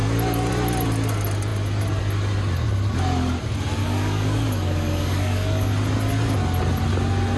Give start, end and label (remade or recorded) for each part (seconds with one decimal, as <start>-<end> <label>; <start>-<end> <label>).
0.0-3.8 recorded; 3.8-5.7 remade; 5.7-7.4 recorded